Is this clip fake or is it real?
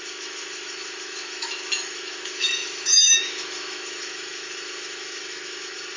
fake